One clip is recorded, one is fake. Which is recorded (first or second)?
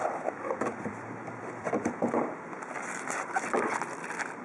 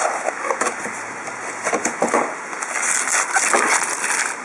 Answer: second